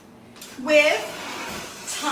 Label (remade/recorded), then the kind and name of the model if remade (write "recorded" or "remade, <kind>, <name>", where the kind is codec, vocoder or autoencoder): recorded